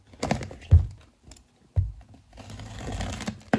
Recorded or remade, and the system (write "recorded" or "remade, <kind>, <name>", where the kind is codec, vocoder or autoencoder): recorded